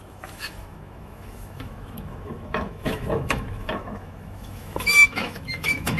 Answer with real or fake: fake